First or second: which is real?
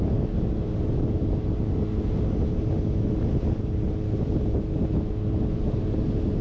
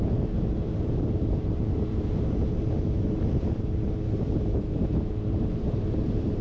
first